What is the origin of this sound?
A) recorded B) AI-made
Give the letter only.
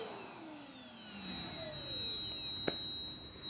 A